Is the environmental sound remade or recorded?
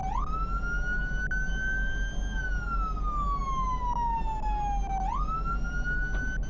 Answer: recorded